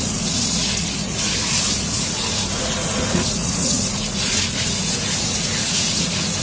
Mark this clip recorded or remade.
remade